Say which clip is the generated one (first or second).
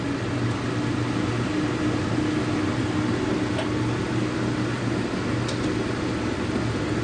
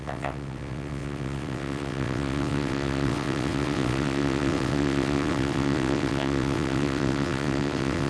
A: second